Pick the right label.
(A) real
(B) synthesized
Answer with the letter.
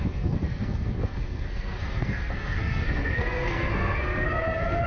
B